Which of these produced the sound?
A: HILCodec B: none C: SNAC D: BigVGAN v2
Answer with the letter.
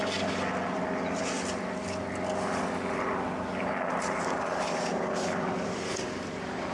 B